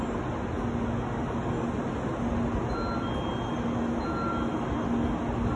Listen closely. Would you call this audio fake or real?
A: real